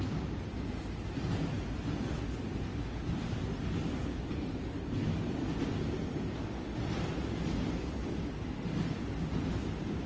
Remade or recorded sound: recorded